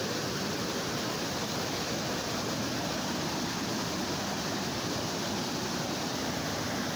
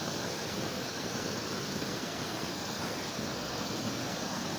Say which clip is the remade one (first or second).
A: second